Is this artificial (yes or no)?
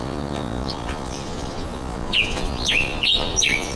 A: yes